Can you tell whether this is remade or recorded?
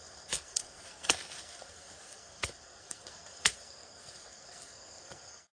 remade